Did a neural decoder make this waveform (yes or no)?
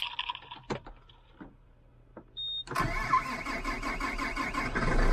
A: no